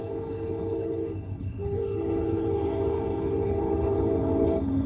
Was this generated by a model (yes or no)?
yes